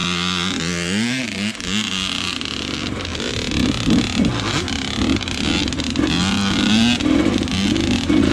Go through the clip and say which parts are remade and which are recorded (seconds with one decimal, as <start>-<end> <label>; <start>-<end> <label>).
0.0-8.3 recorded